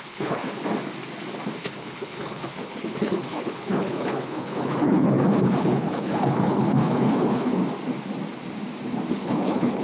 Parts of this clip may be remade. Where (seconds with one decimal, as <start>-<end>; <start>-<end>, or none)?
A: 0.0-0.6; 1.6-7.6; 9.1-9.8